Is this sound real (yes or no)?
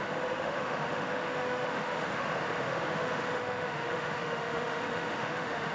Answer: no